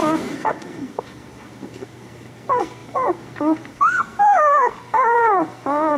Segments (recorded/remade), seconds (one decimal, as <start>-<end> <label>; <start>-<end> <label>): 0.0-6.0 remade